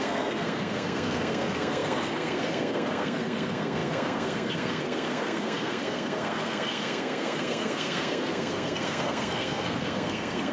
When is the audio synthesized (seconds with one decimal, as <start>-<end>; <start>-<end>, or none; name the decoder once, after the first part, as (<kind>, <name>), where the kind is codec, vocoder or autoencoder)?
0.0-10.5 (codec, SNAC)

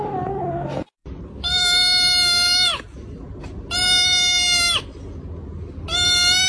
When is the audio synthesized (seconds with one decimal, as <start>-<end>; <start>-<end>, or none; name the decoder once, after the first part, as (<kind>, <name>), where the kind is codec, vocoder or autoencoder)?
none

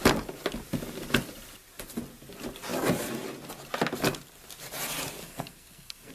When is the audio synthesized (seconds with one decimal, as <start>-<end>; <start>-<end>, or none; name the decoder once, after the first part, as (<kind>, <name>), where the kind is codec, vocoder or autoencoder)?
5.2-6.1 (codec, SNAC)

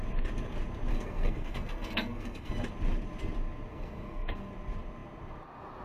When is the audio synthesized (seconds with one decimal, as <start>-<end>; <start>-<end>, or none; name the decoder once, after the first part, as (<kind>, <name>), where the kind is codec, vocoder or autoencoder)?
0.9-2.5 (codec, SNAC); 3.7-4.5